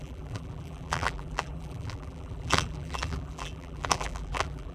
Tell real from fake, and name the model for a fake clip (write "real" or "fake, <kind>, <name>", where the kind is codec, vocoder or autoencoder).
fake, vocoder, BigVGAN v2